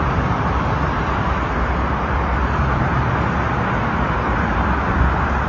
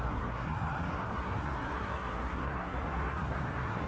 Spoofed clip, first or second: second